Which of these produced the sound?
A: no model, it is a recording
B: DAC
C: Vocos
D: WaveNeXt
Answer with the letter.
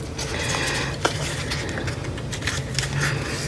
A